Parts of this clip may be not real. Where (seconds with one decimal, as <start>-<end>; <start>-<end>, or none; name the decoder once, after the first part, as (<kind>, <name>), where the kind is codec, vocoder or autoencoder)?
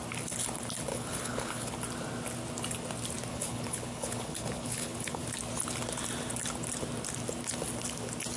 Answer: 0.9-1.7 (codec, HILCodec); 3.3-5.2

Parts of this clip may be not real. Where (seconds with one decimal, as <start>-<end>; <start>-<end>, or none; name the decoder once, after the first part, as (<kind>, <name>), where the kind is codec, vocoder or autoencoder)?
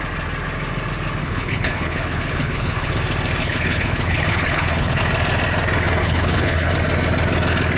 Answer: 1.2-2.9 (codec, HILCodec); 3.4-5.0; 6.0-6.7